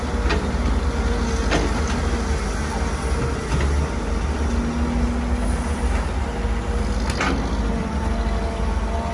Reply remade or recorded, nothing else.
recorded